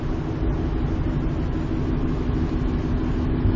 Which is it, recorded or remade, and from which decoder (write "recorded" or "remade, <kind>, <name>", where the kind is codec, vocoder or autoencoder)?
recorded